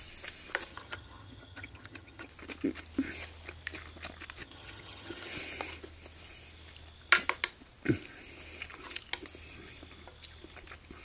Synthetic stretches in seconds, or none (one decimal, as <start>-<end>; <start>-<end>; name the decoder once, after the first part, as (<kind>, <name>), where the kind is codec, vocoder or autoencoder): 0.7-2.3 (vocoder, HiFi-GAN); 4.4-5.3